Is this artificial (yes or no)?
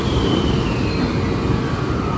no